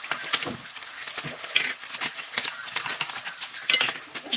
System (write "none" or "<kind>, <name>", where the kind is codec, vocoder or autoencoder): none